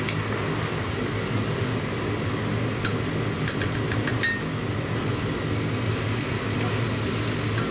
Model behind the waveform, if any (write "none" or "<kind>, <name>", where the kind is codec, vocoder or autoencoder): none